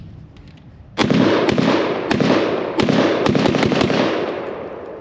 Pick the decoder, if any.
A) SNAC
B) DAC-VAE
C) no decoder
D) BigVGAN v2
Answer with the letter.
C